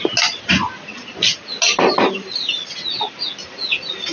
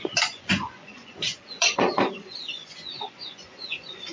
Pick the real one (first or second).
first